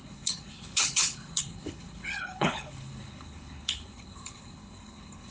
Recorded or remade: remade